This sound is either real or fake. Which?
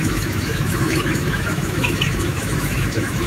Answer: fake